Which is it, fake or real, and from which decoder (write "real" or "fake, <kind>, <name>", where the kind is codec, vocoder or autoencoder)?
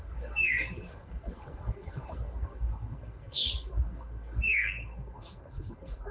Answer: fake, codec, SNAC